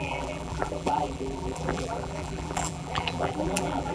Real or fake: fake